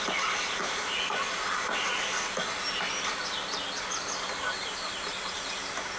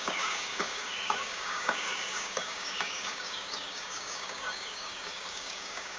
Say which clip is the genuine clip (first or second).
first